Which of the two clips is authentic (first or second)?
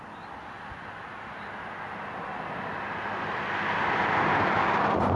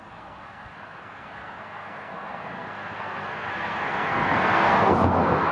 first